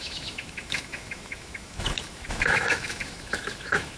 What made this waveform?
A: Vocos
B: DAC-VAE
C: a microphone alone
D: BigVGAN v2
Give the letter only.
B